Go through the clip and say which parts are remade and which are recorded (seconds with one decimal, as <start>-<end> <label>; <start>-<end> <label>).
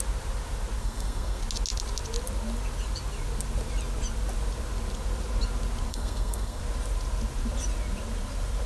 0.0-0.8 recorded; 0.8-1.4 remade; 1.4-5.9 recorded; 5.9-6.6 remade; 6.6-8.7 recorded